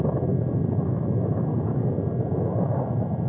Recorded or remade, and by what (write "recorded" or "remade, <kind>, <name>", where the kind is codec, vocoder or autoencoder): recorded